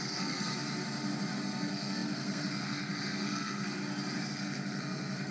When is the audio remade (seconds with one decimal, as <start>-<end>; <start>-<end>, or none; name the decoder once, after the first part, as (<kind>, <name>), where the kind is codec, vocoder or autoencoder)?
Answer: 0.0-0.5 (codec, SNAC); 1.4-3.8; 4.3-5.3